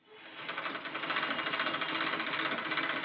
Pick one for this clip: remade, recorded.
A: recorded